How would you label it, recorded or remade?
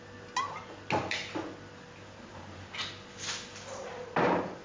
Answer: recorded